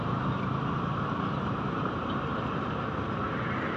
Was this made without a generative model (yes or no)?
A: no